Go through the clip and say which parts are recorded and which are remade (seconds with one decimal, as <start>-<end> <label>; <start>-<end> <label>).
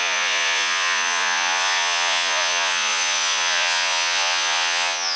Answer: 0.0-5.2 remade